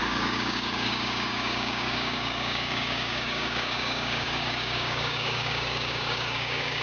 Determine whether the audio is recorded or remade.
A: remade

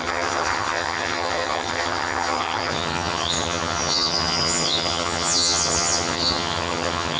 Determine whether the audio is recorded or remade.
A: remade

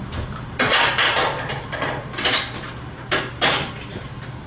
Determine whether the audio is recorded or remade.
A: remade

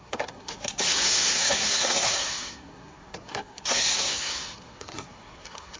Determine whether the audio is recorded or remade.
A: remade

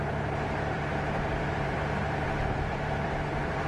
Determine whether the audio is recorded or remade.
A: remade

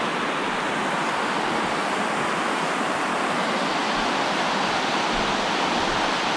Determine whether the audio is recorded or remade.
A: recorded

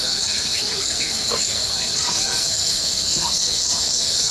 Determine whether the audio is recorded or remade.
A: remade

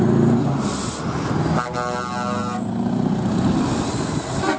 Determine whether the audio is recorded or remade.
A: recorded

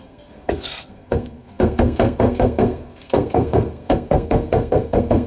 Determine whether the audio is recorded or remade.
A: remade